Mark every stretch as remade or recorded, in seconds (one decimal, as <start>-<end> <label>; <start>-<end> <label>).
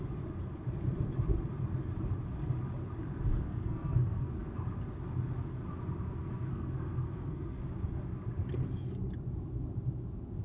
0.0-3.3 recorded; 3.3-4.3 remade; 4.3-6.2 recorded; 6.2-7.6 remade; 7.6-10.4 recorded